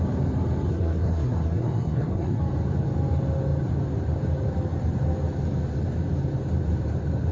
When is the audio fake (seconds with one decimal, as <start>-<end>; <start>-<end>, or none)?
0.7-2.4